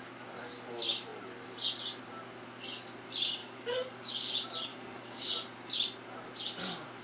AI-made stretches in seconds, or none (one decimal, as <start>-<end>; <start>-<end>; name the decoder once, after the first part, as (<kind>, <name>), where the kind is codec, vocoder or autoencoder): 3.4-4.2 (codec, DAC); 4.7-5.3